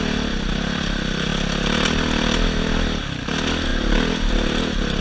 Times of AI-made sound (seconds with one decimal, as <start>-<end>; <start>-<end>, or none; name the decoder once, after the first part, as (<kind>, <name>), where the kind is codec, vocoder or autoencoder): none